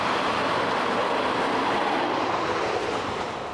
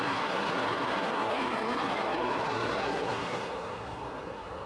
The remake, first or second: second